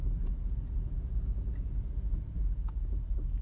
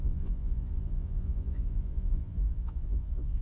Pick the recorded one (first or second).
first